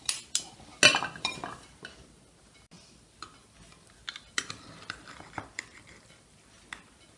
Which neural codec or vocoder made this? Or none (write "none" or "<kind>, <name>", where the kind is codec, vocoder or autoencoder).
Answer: none